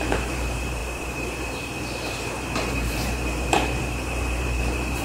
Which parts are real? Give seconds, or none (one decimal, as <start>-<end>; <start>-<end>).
none